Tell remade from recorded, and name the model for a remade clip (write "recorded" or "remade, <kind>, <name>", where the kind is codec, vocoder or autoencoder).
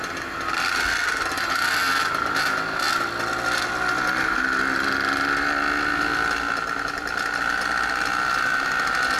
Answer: recorded